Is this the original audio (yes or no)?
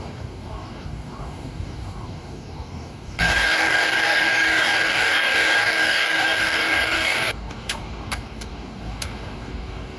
no